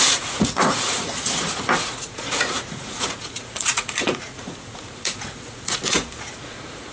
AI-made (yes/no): yes